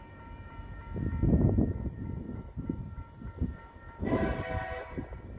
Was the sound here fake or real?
fake